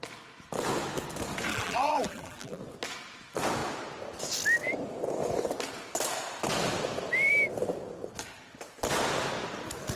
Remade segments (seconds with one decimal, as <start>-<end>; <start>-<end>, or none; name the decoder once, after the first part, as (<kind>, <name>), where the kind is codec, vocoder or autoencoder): 1.5-2.6 (vocoder, BigVGAN v2)